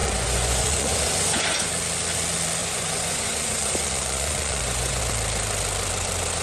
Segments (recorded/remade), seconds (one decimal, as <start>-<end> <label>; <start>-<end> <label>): 0.0-1.7 remade; 1.7-2.6 recorded; 2.6-5.0 remade; 5.0-6.4 recorded